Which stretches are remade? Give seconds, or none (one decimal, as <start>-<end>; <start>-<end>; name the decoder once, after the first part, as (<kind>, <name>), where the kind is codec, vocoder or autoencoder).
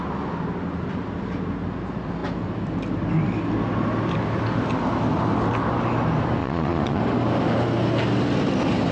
6.4-7.0 (vocoder, Vocos)